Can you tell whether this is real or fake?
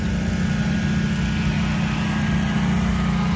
real